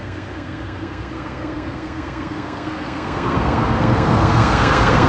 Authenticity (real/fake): fake